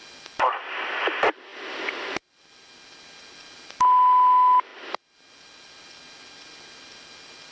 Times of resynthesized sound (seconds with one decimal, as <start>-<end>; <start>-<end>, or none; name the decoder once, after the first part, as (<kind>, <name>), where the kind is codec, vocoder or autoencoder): none